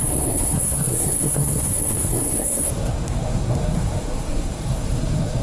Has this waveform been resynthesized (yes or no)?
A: yes